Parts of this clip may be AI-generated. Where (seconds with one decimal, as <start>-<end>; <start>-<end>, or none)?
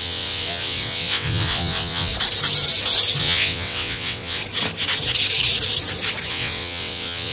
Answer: 0.0-2.1; 3.2-4.4; 6.3-7.3